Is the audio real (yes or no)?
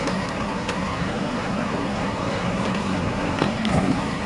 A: no